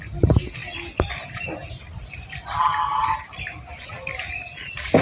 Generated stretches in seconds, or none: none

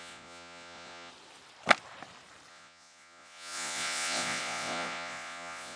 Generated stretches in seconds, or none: 0.0-1.1 (vocoder, Vocos); 2.5-5.8

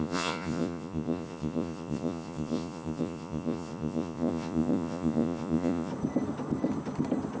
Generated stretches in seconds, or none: 0.0-5.9 (vocoder, Vocos)

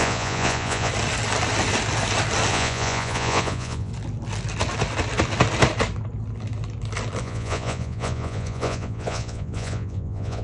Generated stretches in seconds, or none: 0.0-0.9 (vocoder, Vocos); 2.5-3.9; 7.2-10.4

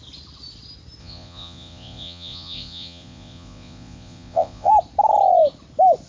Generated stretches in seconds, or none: 1.0-4.7 (vocoder, Vocos)

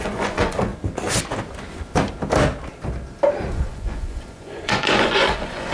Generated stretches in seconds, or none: 0.0-0.7 (vocoder, Vocos); 3.5-5.7